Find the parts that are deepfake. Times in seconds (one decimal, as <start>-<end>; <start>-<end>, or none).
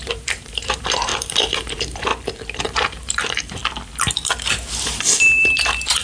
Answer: 0.0-2.1; 2.6-3.6; 5.2-6.0